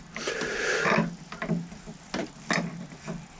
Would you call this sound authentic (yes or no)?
yes